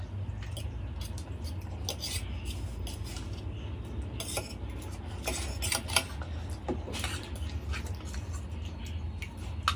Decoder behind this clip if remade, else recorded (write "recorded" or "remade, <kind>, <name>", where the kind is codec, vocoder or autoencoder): recorded